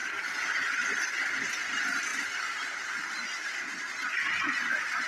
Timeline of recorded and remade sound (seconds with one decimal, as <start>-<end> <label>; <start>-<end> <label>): 0.0-2.1 recorded; 2.1-3.8 remade; 3.8-5.1 recorded